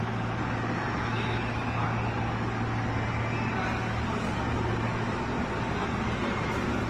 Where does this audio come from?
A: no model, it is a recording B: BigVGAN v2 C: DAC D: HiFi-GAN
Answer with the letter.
A